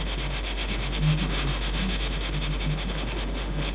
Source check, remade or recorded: remade